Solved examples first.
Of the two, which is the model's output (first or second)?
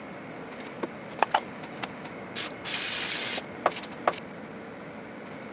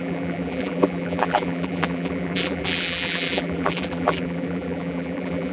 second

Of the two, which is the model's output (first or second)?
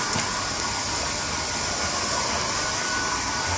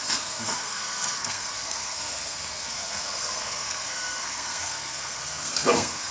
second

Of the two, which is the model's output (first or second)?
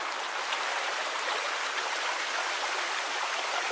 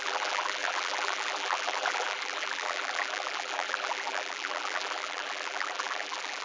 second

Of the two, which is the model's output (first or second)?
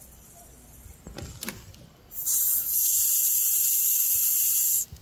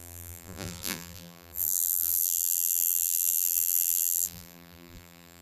second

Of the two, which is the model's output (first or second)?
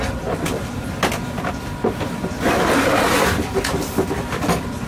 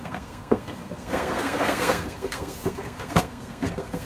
second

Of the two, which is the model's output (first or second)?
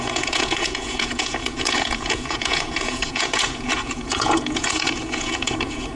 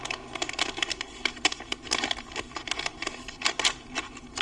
first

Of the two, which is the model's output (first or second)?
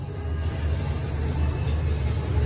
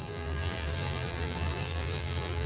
second